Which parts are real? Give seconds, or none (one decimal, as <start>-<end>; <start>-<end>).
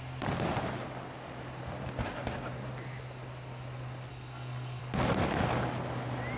0.0-4.1; 4.8-6.4